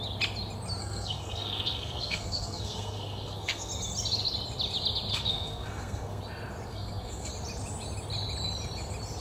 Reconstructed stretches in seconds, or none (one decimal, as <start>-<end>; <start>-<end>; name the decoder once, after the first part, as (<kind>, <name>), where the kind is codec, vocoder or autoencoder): 0.8-3.7 (codec, SNAC); 5.1-6.2; 6.7-7.3